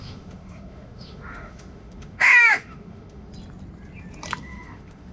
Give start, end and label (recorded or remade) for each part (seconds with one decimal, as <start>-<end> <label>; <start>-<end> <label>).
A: 0.0-3.3 remade; 3.3-4.4 recorded; 4.4-5.1 remade